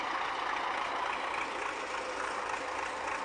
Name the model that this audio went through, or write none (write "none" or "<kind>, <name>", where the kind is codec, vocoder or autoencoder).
none